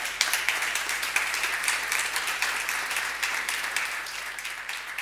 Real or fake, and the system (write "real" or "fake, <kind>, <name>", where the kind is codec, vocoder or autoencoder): fake, vocoder, BigVGAN v2